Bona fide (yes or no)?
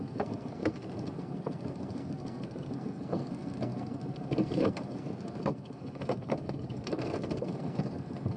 no